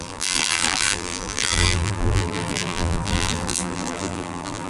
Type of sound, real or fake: fake